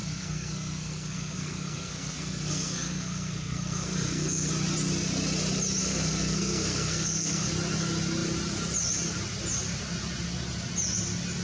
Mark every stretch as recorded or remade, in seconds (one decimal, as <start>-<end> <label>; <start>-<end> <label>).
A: 0.0-4.5 remade; 4.5-5.8 recorded; 5.8-7.5 remade; 7.5-11.4 recorded